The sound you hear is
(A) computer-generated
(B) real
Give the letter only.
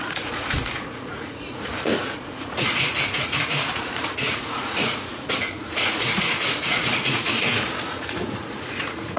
A